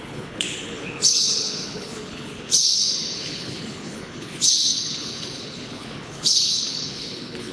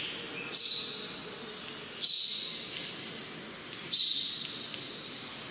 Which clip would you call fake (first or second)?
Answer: first